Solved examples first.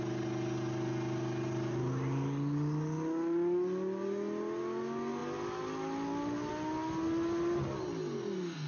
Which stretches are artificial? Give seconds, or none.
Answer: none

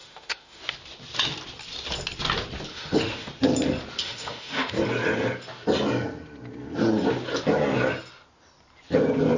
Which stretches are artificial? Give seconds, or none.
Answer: 0.0-0.6 (autoencoder, DAC-VAE); 2.7-3.3; 4.0-4.8

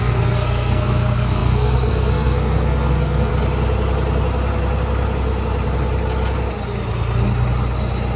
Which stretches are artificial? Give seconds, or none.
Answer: 0.0-3.3 (codec, SNAC)

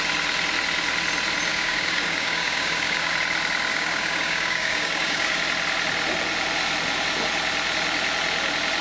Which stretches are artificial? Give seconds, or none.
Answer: 1.5-3.1 (codec, DAC); 3.7-5.4

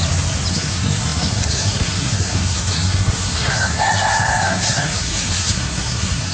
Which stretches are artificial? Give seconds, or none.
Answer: 0.5-6.3 (codec, SNAC)

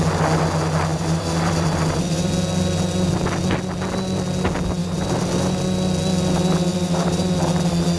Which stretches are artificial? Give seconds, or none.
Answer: 0.9-2.3 (vocoder, BigVGAN v2); 4.8-5.5; 6.7-7.3